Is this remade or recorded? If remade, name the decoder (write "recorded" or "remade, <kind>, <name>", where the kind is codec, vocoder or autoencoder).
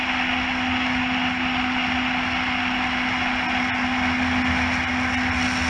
recorded